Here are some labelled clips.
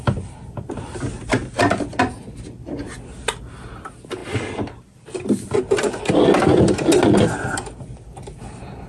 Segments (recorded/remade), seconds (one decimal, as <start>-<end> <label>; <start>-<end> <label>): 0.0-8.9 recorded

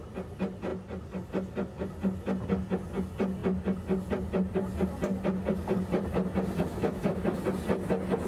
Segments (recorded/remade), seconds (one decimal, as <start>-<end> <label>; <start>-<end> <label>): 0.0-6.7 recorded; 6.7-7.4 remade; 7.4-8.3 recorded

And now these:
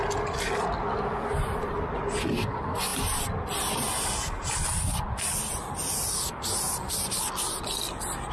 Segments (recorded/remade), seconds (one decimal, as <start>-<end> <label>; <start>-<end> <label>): 0.0-8.3 recorded

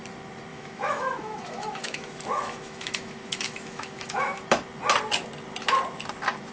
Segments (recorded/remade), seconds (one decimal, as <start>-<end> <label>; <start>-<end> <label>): 0.0-0.5 recorded; 0.5-4.4 remade; 4.4-6.5 recorded

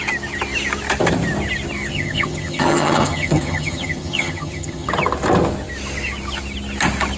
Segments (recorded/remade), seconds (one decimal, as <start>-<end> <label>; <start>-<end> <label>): 0.0-1.9 recorded; 1.9-4.9 remade; 4.9-7.2 recorded

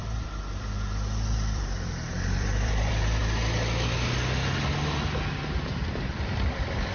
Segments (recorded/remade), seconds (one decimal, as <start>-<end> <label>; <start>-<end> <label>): 0.0-3.2 remade; 3.2-5.8 recorded; 5.8-6.9 remade